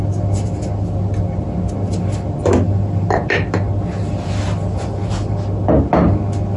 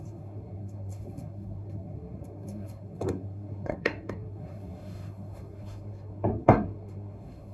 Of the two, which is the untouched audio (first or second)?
first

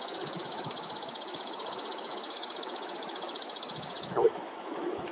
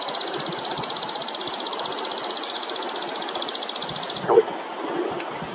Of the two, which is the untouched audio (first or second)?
second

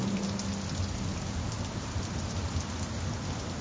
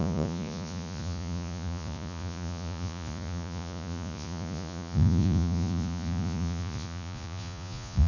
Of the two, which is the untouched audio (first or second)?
first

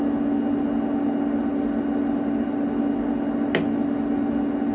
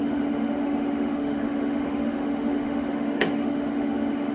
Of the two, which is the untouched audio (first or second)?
first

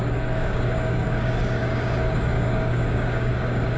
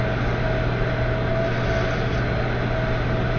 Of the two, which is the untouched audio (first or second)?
second